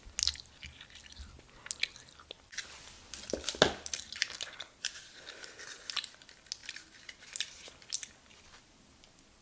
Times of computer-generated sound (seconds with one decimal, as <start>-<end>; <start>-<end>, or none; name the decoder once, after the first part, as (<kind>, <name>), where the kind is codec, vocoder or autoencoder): none